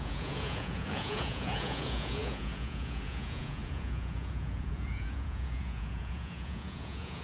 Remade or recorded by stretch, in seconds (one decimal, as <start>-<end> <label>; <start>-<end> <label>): 0.0-7.2 remade